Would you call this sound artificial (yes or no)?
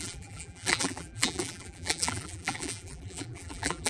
yes